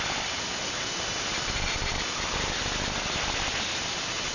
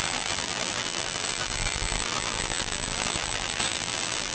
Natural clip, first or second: first